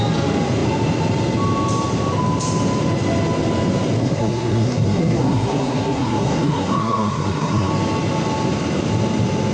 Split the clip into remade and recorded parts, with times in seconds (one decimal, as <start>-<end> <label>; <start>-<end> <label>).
0.0-4.0 recorded; 4.0-7.7 remade; 7.7-9.5 recorded